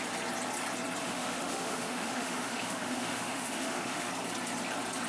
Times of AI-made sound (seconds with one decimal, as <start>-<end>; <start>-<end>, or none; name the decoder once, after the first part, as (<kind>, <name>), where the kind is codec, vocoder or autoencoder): 1.0-4.1 (autoencoder, DAC-VAE)